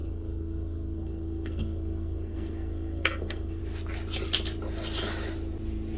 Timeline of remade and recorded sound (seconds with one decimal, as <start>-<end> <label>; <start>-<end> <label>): 0.0-3.6 remade; 3.6-6.0 recorded